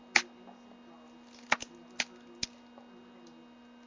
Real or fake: real